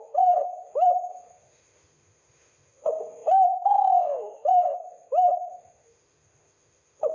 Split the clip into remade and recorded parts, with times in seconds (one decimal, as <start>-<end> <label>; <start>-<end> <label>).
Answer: 0.0-7.1 remade